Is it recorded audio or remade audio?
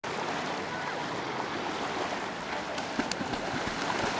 recorded